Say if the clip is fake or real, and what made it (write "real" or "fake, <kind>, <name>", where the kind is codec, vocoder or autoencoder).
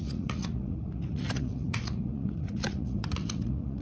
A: fake, vocoder, Vocos